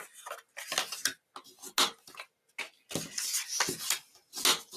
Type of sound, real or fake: real